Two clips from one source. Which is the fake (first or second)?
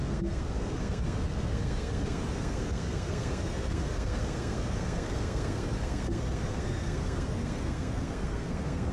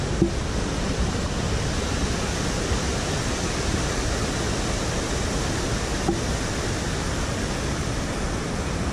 first